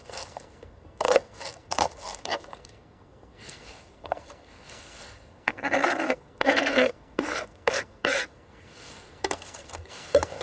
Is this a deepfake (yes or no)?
yes